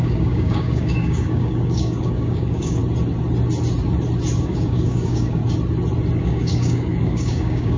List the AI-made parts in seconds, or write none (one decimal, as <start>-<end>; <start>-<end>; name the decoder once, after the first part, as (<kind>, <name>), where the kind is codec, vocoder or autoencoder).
0.0-2.8 (codec, DAC); 4.4-5.4; 6.2-7.8